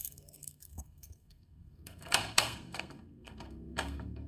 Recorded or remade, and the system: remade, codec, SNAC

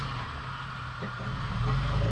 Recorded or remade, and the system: recorded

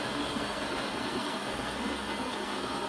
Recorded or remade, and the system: remade, codec, SNAC